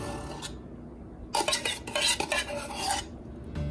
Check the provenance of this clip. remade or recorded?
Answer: recorded